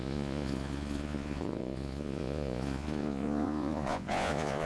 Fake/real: fake